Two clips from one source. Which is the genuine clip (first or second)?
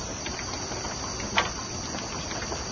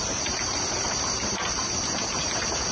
first